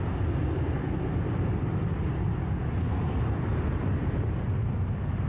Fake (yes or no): no